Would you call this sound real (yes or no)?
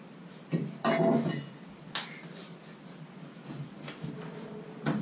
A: yes